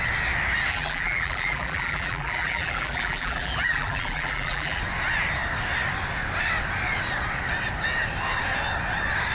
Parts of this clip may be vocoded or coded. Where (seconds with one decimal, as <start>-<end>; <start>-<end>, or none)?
0.7-4.8